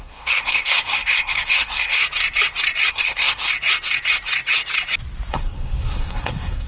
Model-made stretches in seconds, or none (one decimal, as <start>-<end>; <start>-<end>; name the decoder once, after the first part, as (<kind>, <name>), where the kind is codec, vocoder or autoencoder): 0.0-2.0 (codec, SNAC); 2.9-3.5; 5.3-6.7